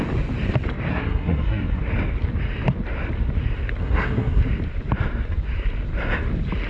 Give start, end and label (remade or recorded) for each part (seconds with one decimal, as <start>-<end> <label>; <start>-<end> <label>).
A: 0.0-0.9 recorded; 0.9-1.8 remade; 1.8-3.8 recorded; 3.8-4.4 remade; 4.4-6.7 recorded